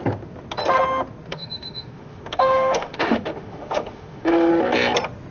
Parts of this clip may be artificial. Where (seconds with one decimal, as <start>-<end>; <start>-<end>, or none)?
1.3-4.5